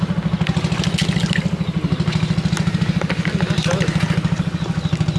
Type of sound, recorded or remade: recorded